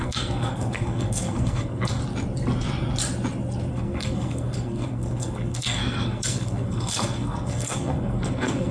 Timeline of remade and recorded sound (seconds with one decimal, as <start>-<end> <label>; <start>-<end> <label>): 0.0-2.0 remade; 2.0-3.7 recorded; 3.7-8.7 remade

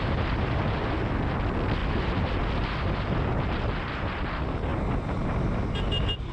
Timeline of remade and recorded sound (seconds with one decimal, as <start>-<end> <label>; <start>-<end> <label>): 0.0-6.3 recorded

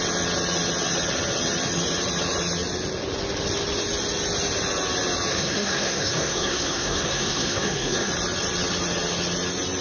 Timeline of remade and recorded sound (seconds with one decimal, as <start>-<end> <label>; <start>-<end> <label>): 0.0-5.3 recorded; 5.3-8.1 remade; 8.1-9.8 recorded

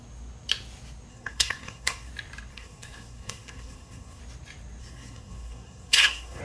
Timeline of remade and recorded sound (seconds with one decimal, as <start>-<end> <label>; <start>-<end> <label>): 0.0-1.1 recorded; 1.1-2.1 remade; 2.1-2.5 recorded; 2.5-4.2 remade; 4.2-4.8 recorded; 4.8-6.4 remade